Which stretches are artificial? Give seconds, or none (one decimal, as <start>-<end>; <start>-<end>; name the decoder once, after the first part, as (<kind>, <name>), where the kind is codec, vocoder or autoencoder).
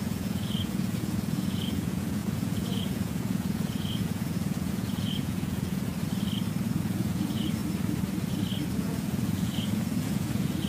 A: 0.0-5.9 (vocoder, Vocos); 6.8-7.6; 8.7-10.7